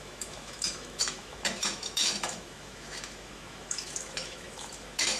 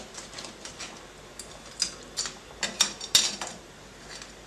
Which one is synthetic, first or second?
first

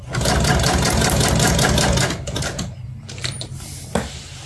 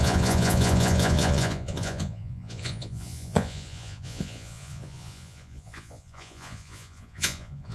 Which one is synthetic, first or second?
second